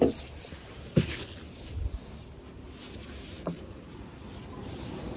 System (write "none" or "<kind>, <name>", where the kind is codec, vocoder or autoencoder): none